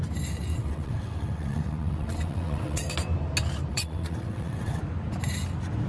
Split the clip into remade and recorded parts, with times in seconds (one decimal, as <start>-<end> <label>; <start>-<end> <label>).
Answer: 0.0-0.5 recorded; 0.5-2.8 remade; 2.8-3.7 recorded; 3.7-4.8 remade; 4.8-5.9 recorded